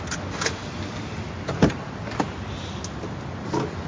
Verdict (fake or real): real